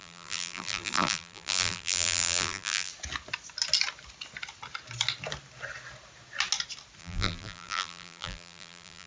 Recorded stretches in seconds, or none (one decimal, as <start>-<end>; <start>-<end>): 2.9-7.0